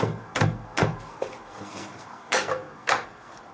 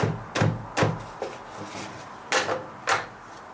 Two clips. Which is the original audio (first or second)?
second